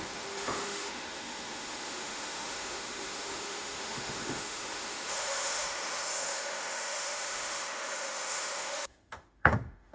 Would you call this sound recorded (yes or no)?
no